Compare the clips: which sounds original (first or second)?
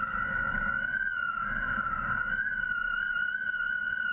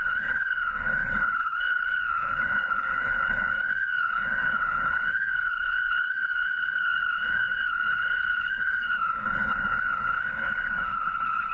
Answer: first